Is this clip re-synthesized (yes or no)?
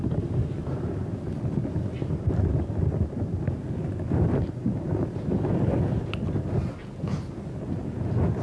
no